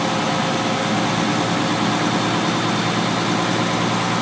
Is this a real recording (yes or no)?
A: yes